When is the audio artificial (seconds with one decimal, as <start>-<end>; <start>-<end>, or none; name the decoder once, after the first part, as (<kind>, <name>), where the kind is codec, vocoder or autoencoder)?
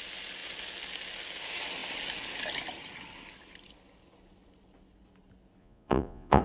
5.6-6.4 (vocoder, Vocos)